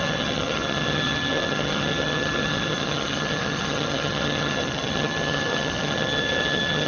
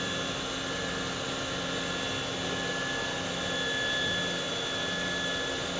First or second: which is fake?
first